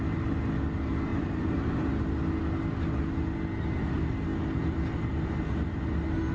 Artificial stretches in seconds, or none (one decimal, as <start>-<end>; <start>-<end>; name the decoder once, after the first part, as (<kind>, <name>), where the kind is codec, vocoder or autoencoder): 1.1-1.9 (vocoder, BigVGAN v2)